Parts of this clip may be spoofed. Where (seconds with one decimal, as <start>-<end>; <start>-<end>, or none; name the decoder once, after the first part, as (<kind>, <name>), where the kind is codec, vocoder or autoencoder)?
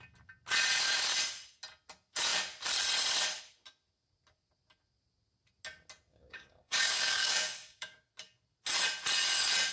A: 6.1-8.1 (codec, DAC)